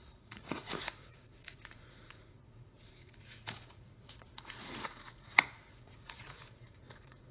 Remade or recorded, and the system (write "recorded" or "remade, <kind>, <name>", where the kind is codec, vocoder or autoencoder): remade, vocoder, Vocos